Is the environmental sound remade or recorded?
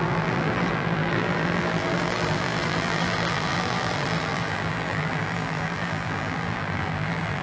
remade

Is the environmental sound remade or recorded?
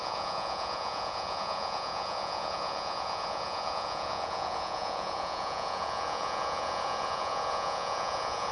remade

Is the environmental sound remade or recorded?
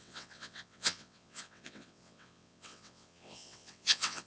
remade